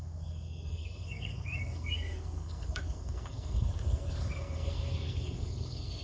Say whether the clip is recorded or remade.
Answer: remade